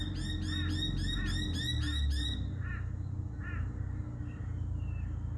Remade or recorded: recorded